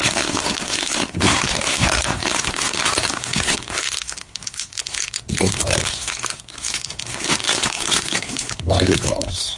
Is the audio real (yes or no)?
no